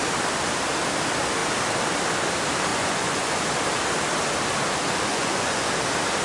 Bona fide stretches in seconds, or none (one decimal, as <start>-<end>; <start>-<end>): 0.0-2.7; 3.4-5.1; 5.7-6.2